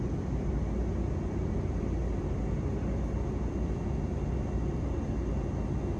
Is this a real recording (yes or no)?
yes